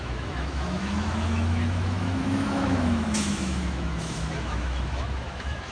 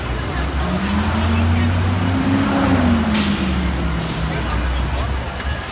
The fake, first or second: first